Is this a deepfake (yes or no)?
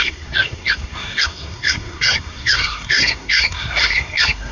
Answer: yes